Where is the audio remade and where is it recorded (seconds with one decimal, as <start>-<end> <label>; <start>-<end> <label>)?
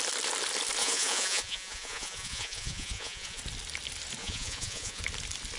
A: 0.0-0.8 recorded; 0.8-3.4 remade; 3.4-4.2 recorded; 4.2-5.0 remade; 5.0-5.6 recorded